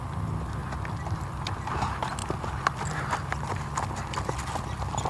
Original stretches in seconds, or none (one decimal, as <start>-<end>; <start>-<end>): 0.0-5.1